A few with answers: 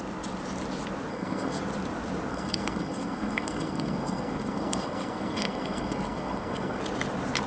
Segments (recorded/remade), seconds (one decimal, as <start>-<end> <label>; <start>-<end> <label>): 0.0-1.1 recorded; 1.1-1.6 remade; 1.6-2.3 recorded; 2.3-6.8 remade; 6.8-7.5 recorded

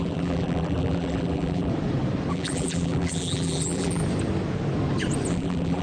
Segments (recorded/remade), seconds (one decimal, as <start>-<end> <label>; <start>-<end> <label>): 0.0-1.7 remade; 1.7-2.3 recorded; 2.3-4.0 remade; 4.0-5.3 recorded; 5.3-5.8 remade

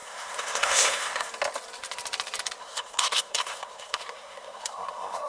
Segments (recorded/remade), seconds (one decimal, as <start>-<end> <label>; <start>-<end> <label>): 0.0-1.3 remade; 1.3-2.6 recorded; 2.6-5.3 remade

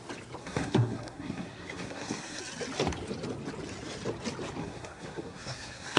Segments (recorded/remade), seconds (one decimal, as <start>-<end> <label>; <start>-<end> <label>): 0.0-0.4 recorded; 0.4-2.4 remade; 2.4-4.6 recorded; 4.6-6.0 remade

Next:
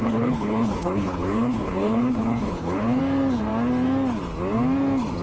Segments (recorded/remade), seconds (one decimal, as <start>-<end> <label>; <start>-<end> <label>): 0.0-3.0 remade; 3.0-5.2 recorded

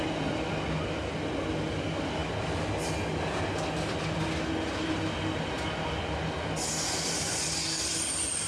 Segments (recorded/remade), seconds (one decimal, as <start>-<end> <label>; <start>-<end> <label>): 0.0-8.5 recorded

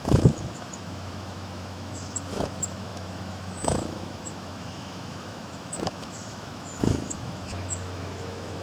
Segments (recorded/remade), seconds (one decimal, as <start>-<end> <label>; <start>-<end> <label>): 0.0-8.6 remade